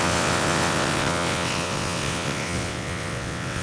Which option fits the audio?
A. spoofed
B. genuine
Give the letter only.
A